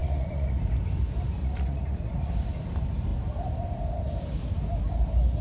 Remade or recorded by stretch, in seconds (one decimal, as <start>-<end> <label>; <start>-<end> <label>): 0.0-0.6 remade; 0.6-1.4 recorded; 1.4-2.3 remade; 2.3-5.4 recorded